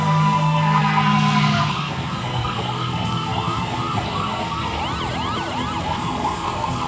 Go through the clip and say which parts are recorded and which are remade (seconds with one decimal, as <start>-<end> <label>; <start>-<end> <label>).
0.0-4.8 remade; 4.8-5.8 recorded; 5.8-6.9 remade